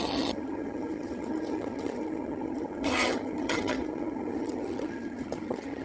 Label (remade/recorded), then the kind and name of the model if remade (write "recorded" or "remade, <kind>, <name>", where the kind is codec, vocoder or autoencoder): remade, vocoder, HiFi-GAN